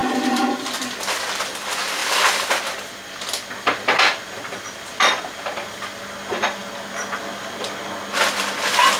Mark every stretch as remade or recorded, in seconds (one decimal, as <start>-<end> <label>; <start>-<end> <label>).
0.0-9.0 recorded